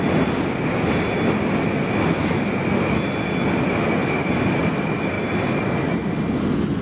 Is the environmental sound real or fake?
real